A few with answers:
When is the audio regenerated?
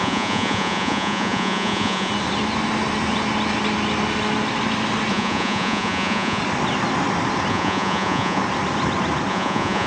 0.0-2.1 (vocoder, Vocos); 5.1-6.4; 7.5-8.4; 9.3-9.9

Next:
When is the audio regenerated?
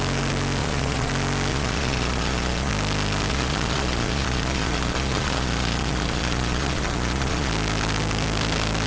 0.6-1.1 (vocoder, Vocos); 1.5-2.7; 3.3-7.5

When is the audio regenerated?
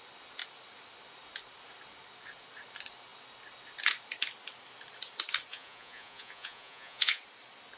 5.5-7.2 (vocoder, Vocos)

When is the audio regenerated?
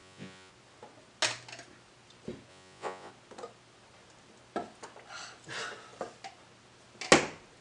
0.0-0.5 (vocoder, Vocos); 2.5-3.1